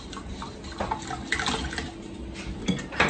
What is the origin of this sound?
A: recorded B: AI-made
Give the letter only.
A